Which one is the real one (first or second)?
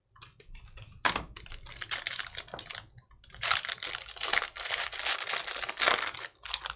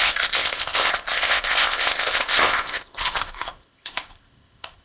first